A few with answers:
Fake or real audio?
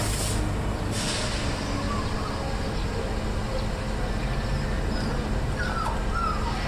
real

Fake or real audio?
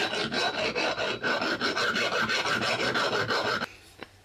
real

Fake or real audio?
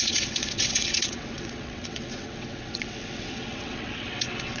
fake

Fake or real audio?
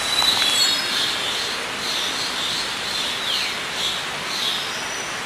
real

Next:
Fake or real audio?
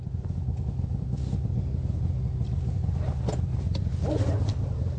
real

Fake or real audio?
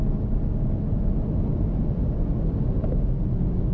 real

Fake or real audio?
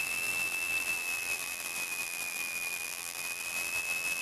fake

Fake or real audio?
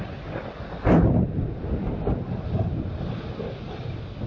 real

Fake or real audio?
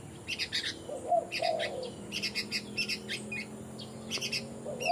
real